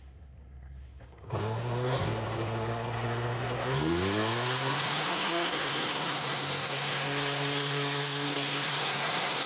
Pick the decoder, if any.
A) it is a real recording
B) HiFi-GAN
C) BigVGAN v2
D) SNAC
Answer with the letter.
D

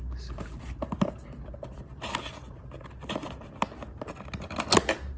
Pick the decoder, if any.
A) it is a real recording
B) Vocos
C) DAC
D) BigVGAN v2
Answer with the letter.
A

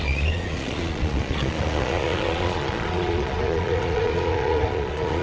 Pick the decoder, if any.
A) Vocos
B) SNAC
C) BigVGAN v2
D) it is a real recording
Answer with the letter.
A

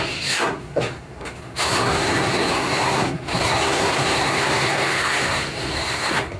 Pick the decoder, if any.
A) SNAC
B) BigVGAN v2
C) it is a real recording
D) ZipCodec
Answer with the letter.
A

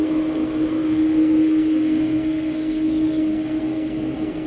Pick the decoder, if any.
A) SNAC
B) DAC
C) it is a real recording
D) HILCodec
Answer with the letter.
A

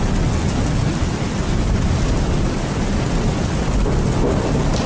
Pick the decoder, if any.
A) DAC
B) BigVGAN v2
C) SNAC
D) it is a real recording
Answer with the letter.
D